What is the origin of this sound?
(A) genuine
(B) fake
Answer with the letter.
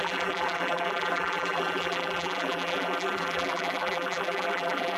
B